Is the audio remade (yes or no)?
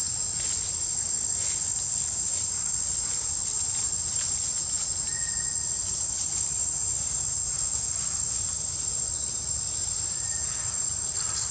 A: no